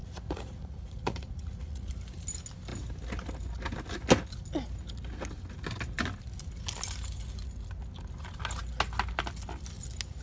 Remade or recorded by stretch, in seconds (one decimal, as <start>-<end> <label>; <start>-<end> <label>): 0.0-1.9 remade; 1.9-10.2 recorded